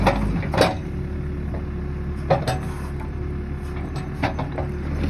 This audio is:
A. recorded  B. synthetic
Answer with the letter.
A